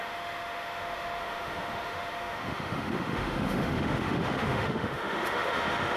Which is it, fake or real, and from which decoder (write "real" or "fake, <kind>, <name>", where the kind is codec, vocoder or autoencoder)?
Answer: fake, autoencoder, DAC-VAE